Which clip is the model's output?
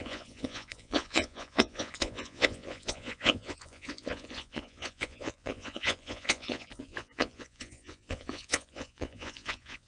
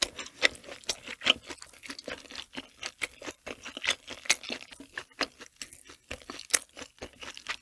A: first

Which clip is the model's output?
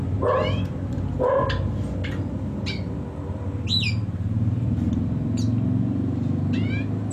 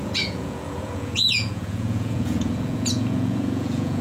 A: second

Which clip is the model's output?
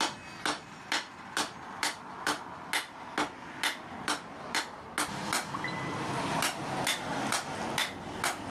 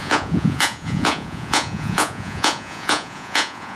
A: second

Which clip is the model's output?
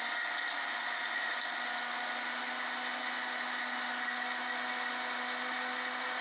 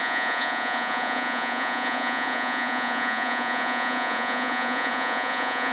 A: second